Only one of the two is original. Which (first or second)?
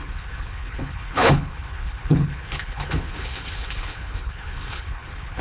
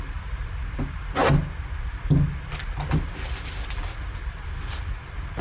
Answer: second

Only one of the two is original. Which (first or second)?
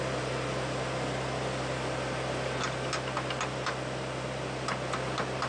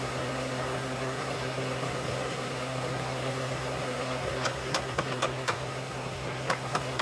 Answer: first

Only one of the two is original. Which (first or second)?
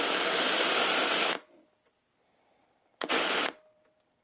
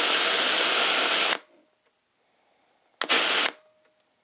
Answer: second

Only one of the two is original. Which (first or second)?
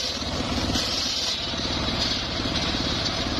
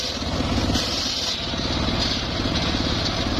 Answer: second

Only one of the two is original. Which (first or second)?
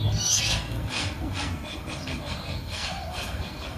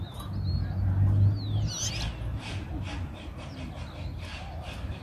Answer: second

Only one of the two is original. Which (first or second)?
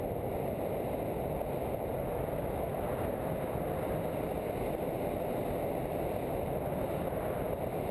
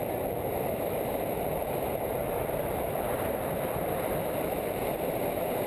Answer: first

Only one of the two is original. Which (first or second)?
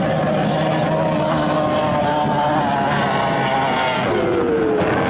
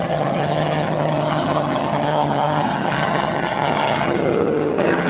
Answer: first